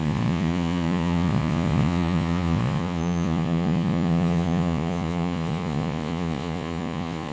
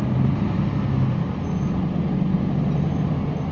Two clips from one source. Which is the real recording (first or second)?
second